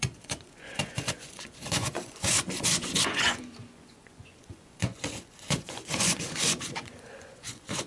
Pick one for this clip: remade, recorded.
remade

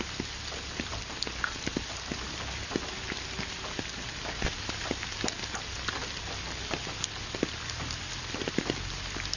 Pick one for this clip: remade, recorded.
recorded